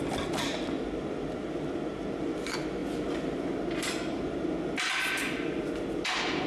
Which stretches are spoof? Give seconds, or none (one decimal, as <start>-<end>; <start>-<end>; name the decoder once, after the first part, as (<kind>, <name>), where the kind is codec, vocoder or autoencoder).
none